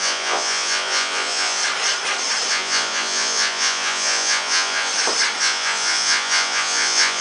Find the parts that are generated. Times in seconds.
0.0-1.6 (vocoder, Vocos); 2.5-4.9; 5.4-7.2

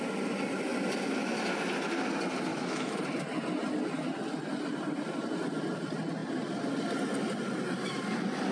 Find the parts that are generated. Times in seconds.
2.5-3.0 (autoencoder, DAC-VAE)